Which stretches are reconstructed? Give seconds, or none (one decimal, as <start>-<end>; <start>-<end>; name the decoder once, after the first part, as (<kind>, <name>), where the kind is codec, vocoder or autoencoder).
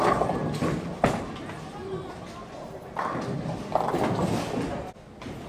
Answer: none